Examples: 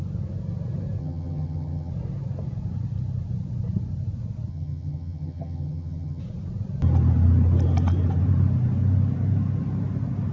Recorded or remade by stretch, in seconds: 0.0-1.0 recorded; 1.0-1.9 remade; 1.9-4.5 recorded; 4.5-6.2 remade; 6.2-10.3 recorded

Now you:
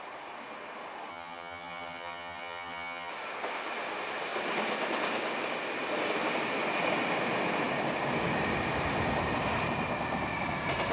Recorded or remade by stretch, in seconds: 0.0-1.1 recorded; 1.1-3.1 remade; 3.1-10.9 recorded

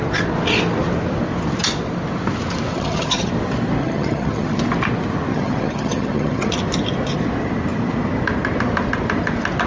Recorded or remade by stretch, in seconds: 0.0-2.7 recorded; 2.7-3.3 remade; 3.3-3.8 recorded; 3.8-4.6 remade; 4.6-5.3 recorded; 5.3-6.5 remade; 6.5-9.7 recorded

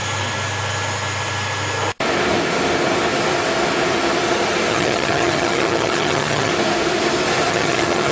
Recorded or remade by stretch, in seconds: 0.0-4.7 recorded; 4.7-6.5 remade; 6.5-7.5 recorded; 7.5-8.1 remade

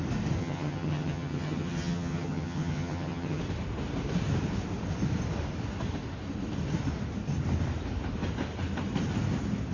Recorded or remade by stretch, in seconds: 0.0-0.4 recorded; 0.4-3.4 remade; 3.4-9.7 recorded

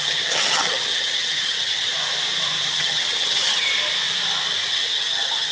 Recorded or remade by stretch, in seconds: 0.0-1.9 remade; 1.9-2.7 recorded; 2.7-3.7 remade; 3.7-4.7 recorded; 4.7-5.5 remade

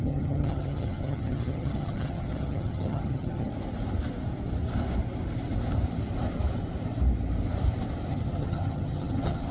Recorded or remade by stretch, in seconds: 0.0-3.5 remade; 3.5-8.1 recorded; 8.1-9.5 remade